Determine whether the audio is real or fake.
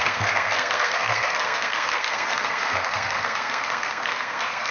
fake